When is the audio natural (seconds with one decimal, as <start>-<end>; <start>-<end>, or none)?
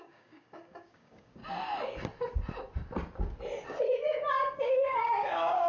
1.4-4.6